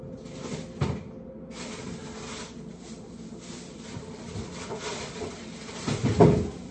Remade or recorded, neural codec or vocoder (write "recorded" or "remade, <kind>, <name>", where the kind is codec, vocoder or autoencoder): recorded